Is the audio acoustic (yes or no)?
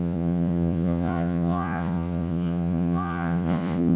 no